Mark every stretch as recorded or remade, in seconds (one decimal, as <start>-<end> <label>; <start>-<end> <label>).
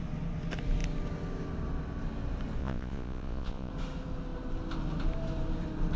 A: 0.0-2.6 recorded; 2.6-3.7 remade; 3.7-6.0 recorded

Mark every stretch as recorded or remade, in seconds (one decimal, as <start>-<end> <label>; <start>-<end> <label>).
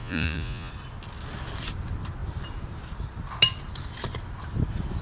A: 0.0-0.7 remade; 0.7-5.0 recorded